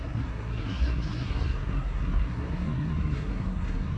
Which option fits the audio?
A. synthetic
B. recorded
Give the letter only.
A